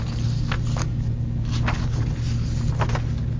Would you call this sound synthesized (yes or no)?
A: no